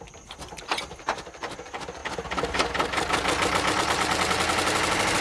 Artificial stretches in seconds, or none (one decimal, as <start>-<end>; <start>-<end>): none